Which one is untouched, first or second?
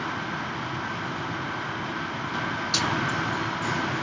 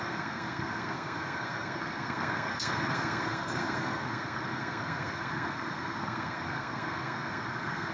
first